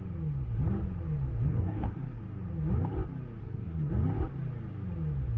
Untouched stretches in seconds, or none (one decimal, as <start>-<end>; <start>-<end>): 0.0-1.5; 2.2-3.4; 3.9-5.4